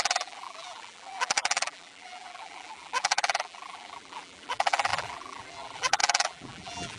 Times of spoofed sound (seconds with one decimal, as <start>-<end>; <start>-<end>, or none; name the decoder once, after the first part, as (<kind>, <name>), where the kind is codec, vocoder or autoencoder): 0.0-7.0 (vocoder, BigVGAN v2)